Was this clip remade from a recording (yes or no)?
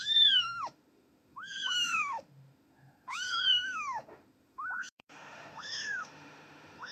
yes